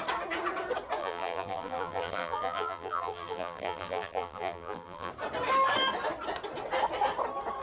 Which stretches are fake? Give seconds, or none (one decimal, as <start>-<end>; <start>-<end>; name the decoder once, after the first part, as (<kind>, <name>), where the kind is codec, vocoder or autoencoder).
1.0-5.1 (vocoder, BigVGAN v2)